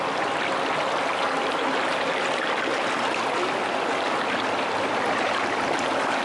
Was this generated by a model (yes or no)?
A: no